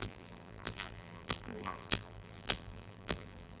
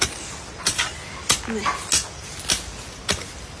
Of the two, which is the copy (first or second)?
first